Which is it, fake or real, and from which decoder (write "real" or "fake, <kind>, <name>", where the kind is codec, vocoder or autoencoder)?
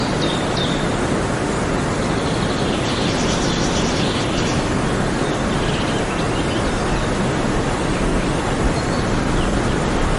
real